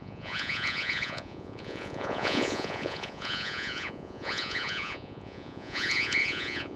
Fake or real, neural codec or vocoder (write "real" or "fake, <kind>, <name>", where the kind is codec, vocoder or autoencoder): fake, vocoder, Vocos